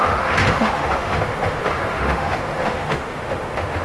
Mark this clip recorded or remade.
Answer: remade